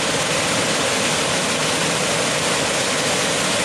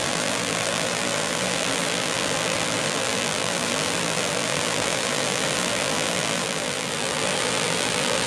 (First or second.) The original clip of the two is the first